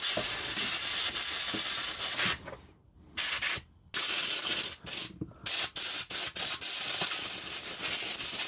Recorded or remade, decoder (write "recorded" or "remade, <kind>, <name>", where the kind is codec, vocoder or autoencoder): recorded